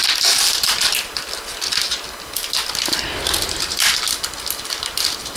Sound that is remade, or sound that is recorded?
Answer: recorded